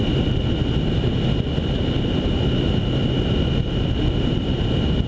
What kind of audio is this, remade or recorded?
recorded